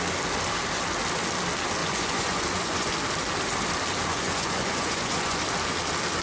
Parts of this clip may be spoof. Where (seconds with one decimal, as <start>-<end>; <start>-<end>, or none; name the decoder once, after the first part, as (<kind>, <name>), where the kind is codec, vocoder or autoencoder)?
1.8-2.9 (vocoder, Vocos); 4.1-5.4